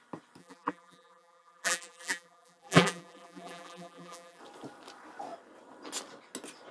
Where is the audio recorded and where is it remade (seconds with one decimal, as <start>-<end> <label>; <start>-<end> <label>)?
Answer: 0.0-0.4 recorded; 0.4-4.4 remade; 4.4-6.7 recorded